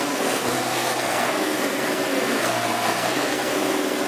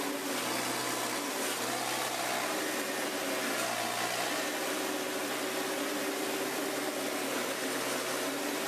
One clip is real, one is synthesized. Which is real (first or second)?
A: second